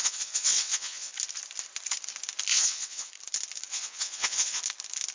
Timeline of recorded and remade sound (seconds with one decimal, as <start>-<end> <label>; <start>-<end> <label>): 0.0-1.1 remade; 1.1-2.5 recorded; 2.5-3.1 remade; 3.1-3.7 recorded; 3.7-4.6 remade; 4.6-5.1 recorded